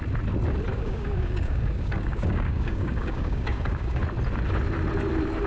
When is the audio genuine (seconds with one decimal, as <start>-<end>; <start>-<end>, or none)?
0.0-0.7; 4.0-5.5